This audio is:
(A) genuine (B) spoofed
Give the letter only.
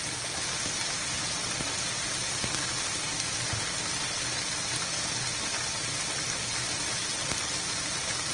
A